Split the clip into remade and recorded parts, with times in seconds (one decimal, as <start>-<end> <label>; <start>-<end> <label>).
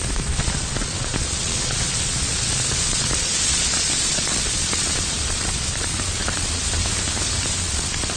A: 0.0-6.8 remade; 6.8-7.6 recorded; 7.6-8.2 remade